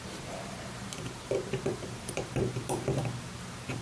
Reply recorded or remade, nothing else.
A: remade